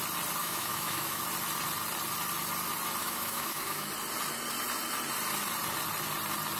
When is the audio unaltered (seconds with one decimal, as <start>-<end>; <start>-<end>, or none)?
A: 0.0-0.4; 1.2-3.0; 3.9-6.6